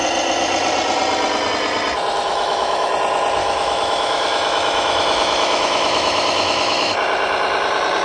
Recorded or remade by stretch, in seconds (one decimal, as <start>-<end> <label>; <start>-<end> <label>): 0.0-2.3 recorded; 2.3-2.9 remade; 2.9-3.4 recorded; 3.4-6.9 remade; 6.9-8.0 recorded